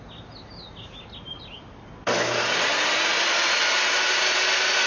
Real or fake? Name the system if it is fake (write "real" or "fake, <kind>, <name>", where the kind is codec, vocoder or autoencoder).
real